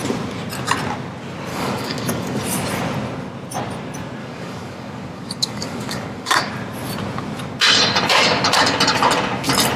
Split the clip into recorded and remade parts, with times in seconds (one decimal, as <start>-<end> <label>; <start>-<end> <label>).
0.0-1.5 recorded; 1.5-2.4 remade; 2.4-4.2 recorded; 4.2-6.5 remade; 6.5-9.8 recorded